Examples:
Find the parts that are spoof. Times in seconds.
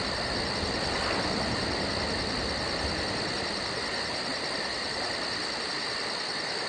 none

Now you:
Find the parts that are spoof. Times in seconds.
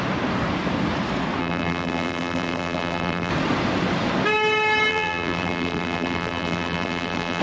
1.4-3.3 (vocoder, BigVGAN v2); 4.9-7.4